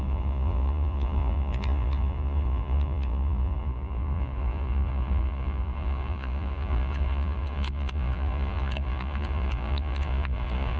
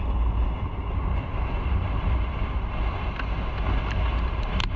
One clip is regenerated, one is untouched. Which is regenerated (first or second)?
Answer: first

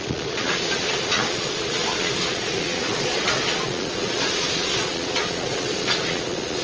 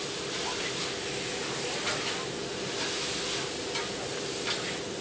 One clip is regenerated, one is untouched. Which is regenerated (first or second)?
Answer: first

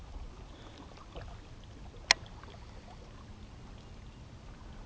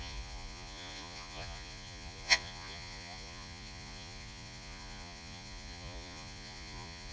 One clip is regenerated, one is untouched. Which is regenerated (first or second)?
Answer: second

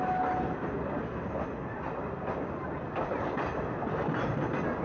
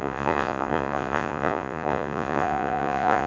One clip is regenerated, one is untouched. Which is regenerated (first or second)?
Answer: second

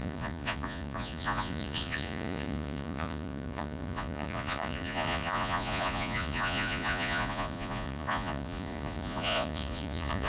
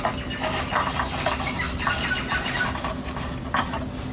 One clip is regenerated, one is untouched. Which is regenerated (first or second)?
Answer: first